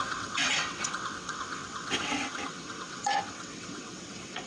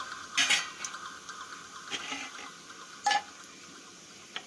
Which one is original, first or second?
second